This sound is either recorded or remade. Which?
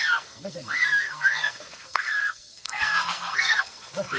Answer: remade